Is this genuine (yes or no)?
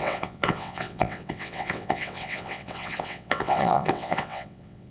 no